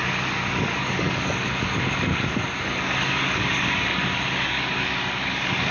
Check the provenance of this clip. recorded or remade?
remade